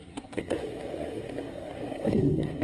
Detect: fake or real fake